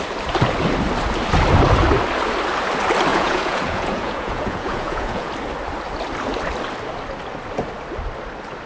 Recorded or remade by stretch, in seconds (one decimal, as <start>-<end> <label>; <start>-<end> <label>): 0.0-3.1 recorded; 3.1-5.3 remade; 5.3-8.7 recorded